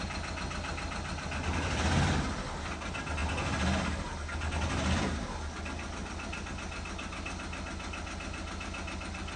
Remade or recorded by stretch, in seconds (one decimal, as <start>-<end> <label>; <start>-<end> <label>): 0.0-9.4 recorded